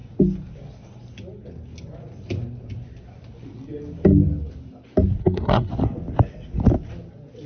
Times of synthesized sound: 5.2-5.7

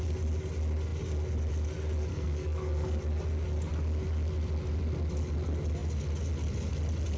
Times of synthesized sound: 2.1-3.0